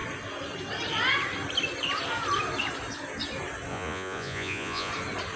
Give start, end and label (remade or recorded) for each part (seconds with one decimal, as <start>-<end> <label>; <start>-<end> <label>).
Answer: 0.0-3.7 recorded; 3.7-4.9 remade; 4.9-5.4 recorded